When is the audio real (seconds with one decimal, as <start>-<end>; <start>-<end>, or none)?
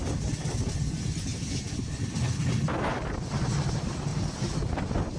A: 0.0-1.3; 3.0-4.1; 4.6-5.2